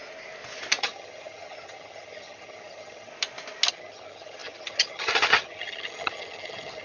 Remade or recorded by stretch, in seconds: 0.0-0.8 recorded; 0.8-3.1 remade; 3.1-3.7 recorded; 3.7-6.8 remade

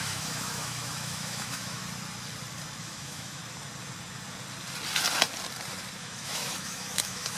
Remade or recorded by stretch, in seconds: 0.0-1.8 remade; 1.8-2.8 recorded; 2.8-3.4 remade; 3.4-6.0 recorded; 6.0-7.4 remade

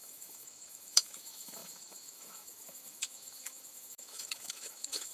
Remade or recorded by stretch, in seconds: 0.0-5.1 remade

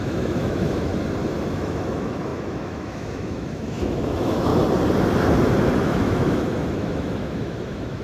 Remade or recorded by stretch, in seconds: 0.0-0.9 remade; 0.9-1.4 recorded; 1.4-4.5 remade; 4.5-5.8 recorded; 5.8-8.0 remade

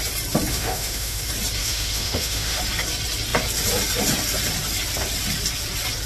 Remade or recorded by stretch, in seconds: 0.0-0.5 recorded; 0.5-1.2 remade; 1.2-1.6 recorded; 1.6-2.6 remade; 2.6-6.1 recorded

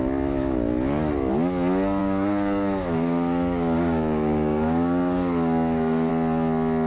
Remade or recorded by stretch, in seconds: 0.0-2.0 recorded; 2.0-6.1 remade; 6.1-6.9 recorded

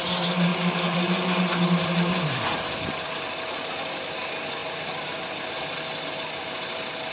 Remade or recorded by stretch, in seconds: 0.0-0.5 recorded; 0.5-3.7 remade; 3.7-4.6 recorded; 4.6-5.5 remade; 5.5-7.1 recorded

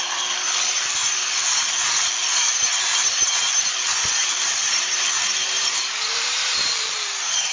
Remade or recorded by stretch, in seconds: 0.0-4.2 recorded; 4.2-7.5 remade